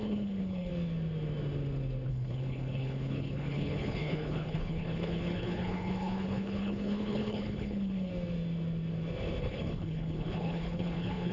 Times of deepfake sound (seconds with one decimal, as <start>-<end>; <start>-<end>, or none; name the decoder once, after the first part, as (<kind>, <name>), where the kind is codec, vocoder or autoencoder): 0.0-0.7 (codec, HILCodec); 2.1-8.1; 9.4-11.3

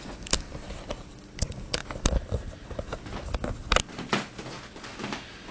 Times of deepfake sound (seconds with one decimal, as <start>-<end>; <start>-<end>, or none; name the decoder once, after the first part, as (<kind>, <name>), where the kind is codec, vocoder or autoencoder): none

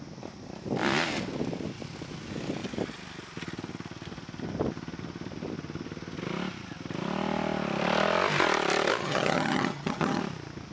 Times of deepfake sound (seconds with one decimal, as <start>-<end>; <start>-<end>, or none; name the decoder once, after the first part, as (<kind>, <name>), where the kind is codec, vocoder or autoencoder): 9.0-10.2 (vocoder, HiFi-GAN)

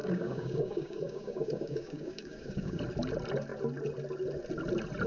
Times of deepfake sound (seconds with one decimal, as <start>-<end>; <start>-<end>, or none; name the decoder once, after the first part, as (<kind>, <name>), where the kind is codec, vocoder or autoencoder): 0.0-2.8 (codec, DAC)

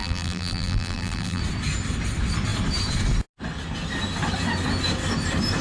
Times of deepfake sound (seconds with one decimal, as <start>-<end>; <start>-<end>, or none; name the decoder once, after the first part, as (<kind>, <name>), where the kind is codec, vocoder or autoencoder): 0.0-1.4 (vocoder, BigVGAN v2)

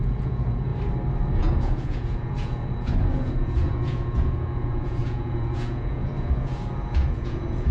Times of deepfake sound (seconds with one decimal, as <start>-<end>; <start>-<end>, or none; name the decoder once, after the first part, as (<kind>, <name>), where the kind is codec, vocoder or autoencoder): 0.0-0.7 (vocoder, Vocos); 1.4-7.7

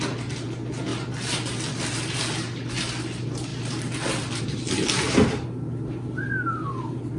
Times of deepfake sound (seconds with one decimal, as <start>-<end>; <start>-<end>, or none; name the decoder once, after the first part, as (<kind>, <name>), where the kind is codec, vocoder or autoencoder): none

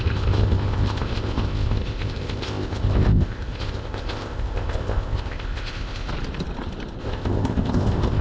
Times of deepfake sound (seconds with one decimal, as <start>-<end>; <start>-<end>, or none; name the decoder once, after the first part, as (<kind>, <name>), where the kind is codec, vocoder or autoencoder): 0.0-6.1 (codec, ZipCodec); 7.0-8.2